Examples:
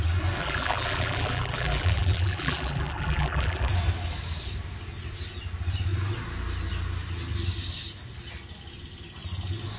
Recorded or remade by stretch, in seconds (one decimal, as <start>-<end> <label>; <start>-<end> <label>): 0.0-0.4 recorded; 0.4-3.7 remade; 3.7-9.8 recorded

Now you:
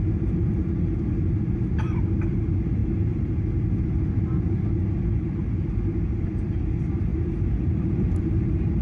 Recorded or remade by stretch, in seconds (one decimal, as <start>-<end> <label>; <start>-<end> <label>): 0.0-7.1 recorded; 7.1-8.8 remade

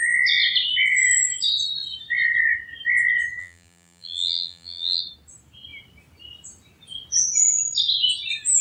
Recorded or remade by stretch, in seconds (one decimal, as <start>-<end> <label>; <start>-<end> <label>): 0.0-3.4 recorded; 3.4-5.0 remade; 5.0-8.6 recorded